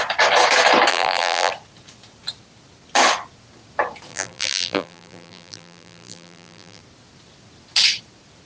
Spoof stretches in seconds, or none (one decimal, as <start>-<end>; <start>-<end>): 0.9-1.5; 4.1-6.8